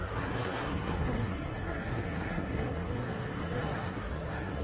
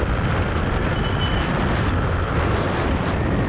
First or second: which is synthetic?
first